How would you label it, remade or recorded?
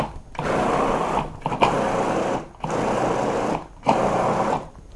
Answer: recorded